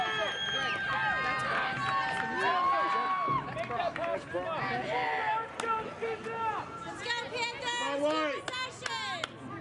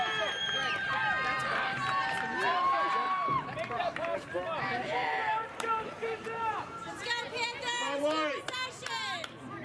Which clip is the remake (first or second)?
second